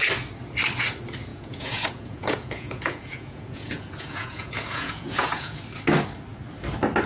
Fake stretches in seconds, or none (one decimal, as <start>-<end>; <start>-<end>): 1.3-5.6